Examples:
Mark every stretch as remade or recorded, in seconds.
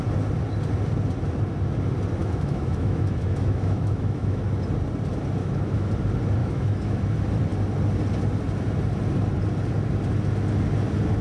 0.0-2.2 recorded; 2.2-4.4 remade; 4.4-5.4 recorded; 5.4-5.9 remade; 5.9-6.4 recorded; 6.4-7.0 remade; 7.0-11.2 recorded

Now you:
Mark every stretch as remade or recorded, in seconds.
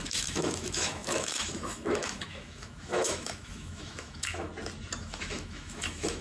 0.0-4.5 remade; 4.5-5.0 recorded; 5.0-6.2 remade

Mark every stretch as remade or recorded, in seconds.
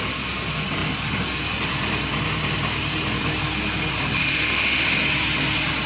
0.0-4.2 recorded; 4.2-4.8 remade; 4.8-5.9 recorded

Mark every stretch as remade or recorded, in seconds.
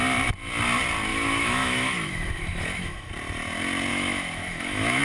0.0-1.1 recorded; 1.1-3.1 remade; 3.1-3.9 recorded; 3.9-5.0 remade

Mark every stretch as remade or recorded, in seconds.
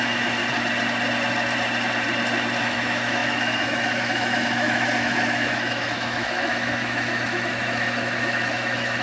0.0-0.4 remade; 0.4-2.6 recorded; 2.6-9.0 remade